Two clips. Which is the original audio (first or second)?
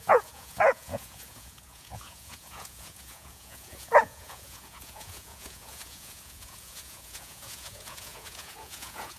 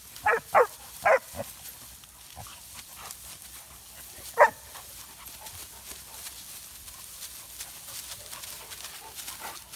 second